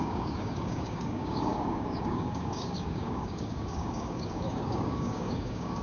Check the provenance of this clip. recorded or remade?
remade